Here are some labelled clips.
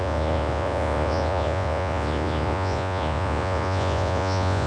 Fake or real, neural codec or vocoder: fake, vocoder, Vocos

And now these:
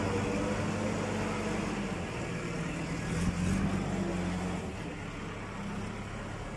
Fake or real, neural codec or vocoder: real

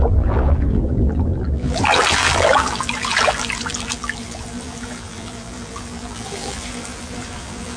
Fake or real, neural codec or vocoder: fake, vocoder, BigVGAN v2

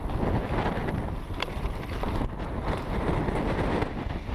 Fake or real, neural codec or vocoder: real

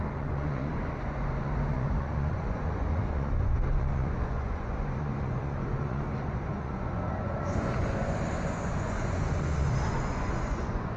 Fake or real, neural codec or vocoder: fake, vocoder, Vocos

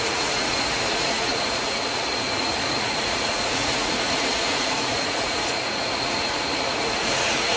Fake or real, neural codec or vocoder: fake, vocoder, Vocos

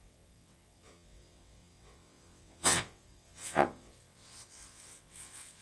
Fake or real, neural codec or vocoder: fake, vocoder, WaveNeXt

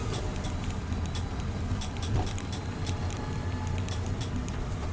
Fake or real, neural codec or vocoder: fake, vocoder, BigVGAN v2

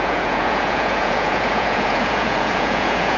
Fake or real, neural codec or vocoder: fake, vocoder, Vocos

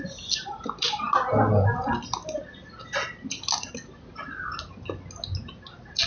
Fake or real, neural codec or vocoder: real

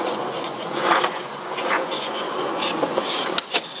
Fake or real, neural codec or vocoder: fake, vocoder, Vocos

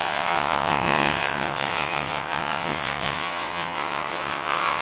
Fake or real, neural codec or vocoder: fake, vocoder, WaveNeXt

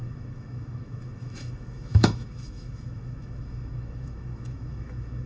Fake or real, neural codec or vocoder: fake, autoencoder, DAC-VAE